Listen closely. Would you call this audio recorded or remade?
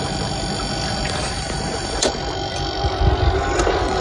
recorded